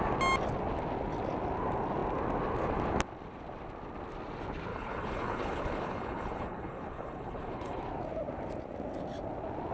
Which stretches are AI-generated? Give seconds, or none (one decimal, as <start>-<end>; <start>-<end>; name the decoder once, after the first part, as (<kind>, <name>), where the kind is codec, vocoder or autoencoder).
4.7-7.8 (codec, HILCodec)